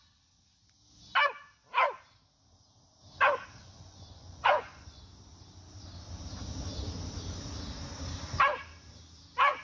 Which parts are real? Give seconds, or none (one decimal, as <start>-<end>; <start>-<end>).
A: 0.0-3.6; 5.0-9.6